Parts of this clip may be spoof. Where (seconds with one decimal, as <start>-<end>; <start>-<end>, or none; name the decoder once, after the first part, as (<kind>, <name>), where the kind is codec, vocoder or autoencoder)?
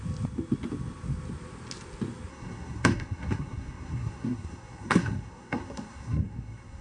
2.3-6.8 (codec, SNAC)